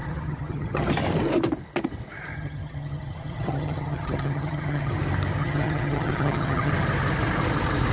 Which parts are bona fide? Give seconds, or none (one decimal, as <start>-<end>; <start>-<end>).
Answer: 0.9-2.3; 4.9-5.4; 6.7-7.9